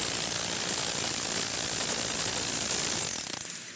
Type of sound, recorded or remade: recorded